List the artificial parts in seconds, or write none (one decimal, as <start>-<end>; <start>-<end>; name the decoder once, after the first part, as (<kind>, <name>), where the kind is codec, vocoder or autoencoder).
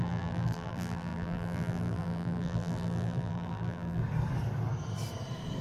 0.0-4.0 (vocoder, BigVGAN v2)